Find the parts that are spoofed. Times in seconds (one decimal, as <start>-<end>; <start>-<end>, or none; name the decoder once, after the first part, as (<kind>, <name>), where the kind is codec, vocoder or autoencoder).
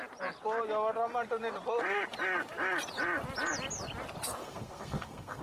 4.4-5.4 (codec, SNAC)